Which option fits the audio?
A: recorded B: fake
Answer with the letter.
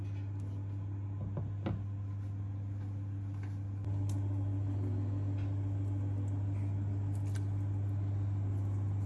A